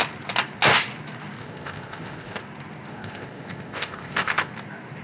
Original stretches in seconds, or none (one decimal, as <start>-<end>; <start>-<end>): 0.0-1.4; 2.4-2.9; 4.5-5.0